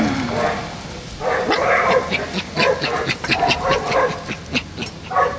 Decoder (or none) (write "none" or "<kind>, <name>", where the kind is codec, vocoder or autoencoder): none